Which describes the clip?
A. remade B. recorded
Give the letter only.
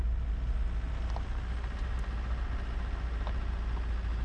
B